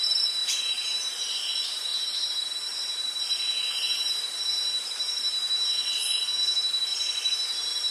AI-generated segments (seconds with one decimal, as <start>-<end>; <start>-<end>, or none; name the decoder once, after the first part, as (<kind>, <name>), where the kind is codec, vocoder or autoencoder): 0.0-1.9 (vocoder, BigVGAN v2); 3.2-6.0; 7.3-7.9